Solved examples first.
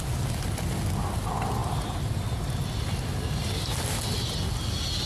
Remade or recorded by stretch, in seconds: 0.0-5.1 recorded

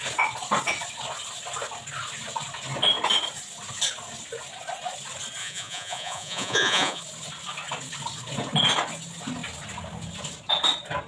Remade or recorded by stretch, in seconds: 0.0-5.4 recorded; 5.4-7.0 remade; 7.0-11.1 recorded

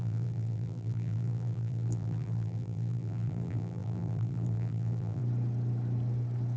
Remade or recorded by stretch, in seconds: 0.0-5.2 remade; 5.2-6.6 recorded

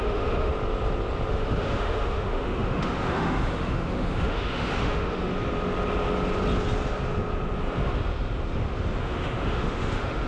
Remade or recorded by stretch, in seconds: 0.0-0.5 remade; 0.5-1.3 recorded; 1.3-5.3 remade; 5.3-9.0 recorded; 9.0-10.3 remade

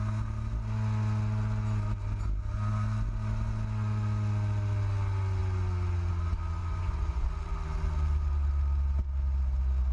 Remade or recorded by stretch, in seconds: 0.0-6.6 recorded; 6.6-7.3 remade; 7.3-9.9 recorded

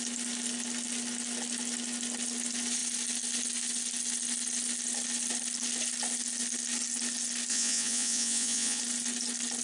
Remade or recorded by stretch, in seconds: 0.0-7.5 recorded; 7.5-8.8 remade; 8.8-9.6 recorded

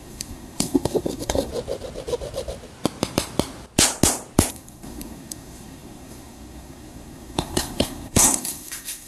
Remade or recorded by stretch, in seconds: 0.0-1.5 remade; 1.5-4.5 recorded; 4.5-9.1 remade